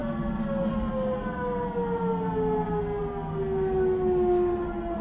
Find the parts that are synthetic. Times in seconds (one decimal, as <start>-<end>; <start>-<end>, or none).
none